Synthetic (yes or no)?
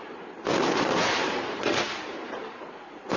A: yes